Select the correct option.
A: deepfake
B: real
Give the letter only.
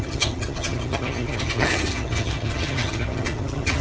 A